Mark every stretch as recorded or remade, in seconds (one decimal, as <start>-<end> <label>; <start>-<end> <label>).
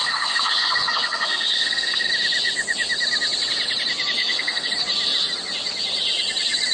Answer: 0.0-2.1 remade; 2.1-4.2 recorded; 4.2-4.7 remade; 4.7-6.7 recorded